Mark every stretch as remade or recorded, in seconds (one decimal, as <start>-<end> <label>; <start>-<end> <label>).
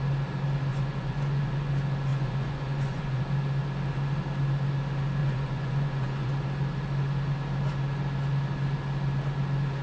0.0-0.7 recorded; 0.7-1.7 remade; 1.7-2.1 recorded; 2.1-3.2 remade; 3.2-5.2 recorded; 5.2-6.3 remade; 6.3-9.8 recorded